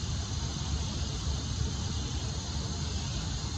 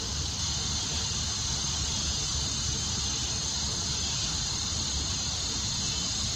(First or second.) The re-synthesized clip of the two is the first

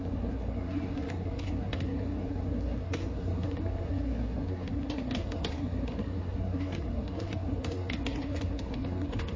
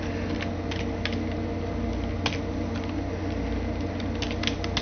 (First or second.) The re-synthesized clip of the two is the first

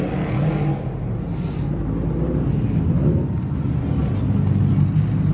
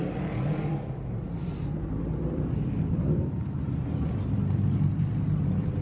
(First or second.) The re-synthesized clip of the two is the second